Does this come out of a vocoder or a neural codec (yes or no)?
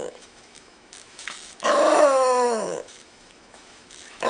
yes